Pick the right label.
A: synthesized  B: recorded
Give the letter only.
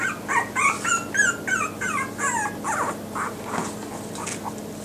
B